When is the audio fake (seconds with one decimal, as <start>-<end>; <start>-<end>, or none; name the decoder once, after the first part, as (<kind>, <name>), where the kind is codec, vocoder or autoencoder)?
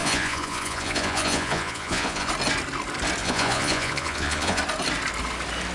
0.0-2.3 (vocoder, Vocos); 3.2-4.6